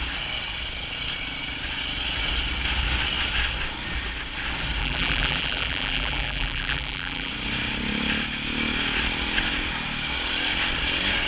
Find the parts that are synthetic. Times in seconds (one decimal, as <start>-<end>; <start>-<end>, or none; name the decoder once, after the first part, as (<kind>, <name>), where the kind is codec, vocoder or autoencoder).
4.8-7.3 (vocoder, BigVGAN v2)